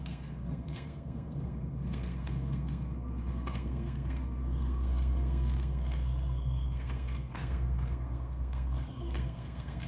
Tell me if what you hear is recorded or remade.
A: remade